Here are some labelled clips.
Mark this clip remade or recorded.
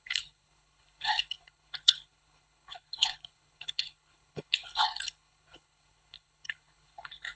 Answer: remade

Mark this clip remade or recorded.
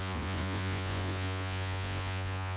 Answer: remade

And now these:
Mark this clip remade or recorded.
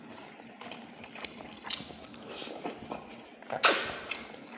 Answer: recorded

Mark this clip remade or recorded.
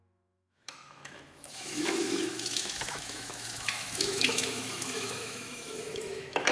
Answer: remade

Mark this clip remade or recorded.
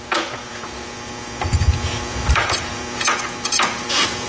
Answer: remade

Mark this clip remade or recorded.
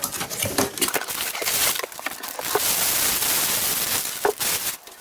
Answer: recorded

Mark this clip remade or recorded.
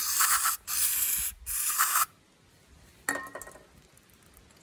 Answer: recorded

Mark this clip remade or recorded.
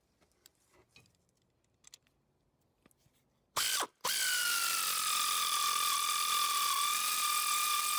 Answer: remade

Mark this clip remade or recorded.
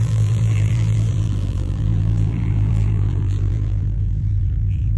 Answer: remade